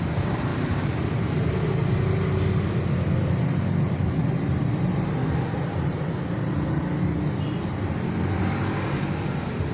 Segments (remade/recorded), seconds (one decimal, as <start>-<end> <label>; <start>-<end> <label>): 0.0-0.5 recorded; 0.5-1.2 remade; 1.2-9.7 recorded